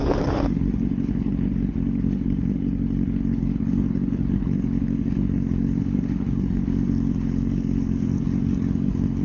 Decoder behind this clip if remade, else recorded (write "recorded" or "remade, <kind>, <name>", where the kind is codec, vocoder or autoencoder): remade, codec, HILCodec